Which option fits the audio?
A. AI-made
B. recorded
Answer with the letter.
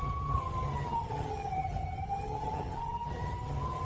A